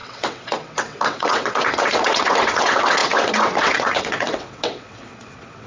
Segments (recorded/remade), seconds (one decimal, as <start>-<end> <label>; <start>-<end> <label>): 0.0-5.7 remade